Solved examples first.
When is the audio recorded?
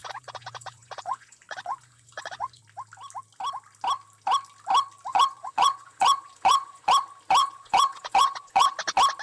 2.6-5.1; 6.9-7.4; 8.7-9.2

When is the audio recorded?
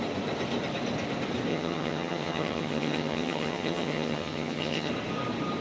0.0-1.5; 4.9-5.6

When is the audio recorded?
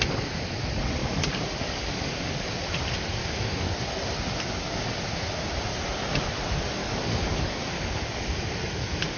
0.0-1.0; 2.5-3.2; 3.8-6.8; 8.2-9.2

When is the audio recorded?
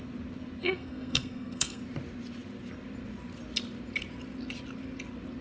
0.0-0.6; 1.8-5.4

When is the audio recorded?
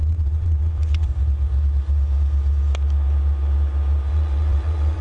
1.1-4.1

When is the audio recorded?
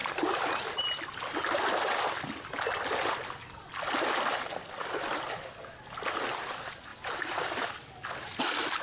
0.0-8.8